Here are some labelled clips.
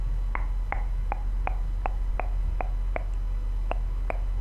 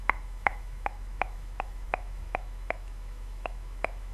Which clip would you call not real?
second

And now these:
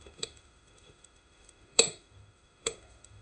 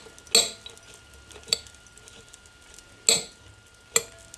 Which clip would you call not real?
first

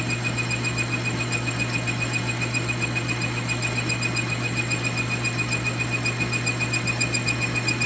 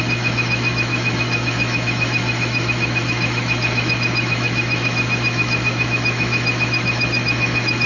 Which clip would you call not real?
second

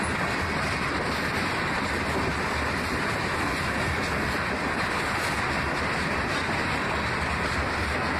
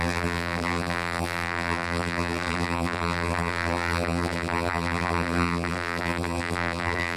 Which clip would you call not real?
second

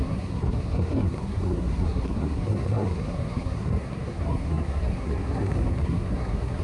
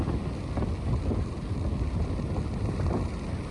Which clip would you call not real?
first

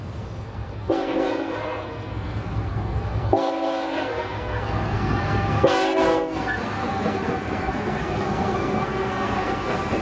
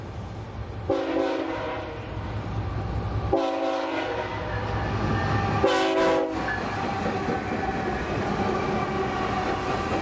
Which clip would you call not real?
first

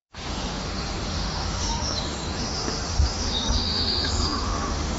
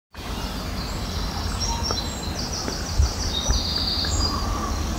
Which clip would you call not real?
first